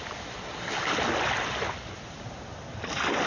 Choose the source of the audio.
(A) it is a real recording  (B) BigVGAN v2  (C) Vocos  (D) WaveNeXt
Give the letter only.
A